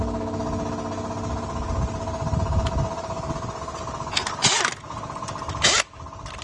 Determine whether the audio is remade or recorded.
recorded